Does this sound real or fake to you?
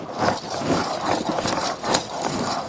real